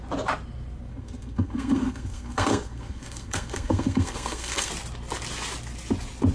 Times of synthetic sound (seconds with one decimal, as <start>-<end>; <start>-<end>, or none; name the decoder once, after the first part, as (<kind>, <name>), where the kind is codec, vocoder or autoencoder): 0.9-4.7 (codec, SNAC)